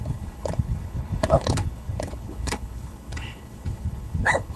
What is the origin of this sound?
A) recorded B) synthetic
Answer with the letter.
B